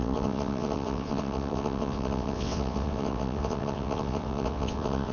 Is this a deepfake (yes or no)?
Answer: yes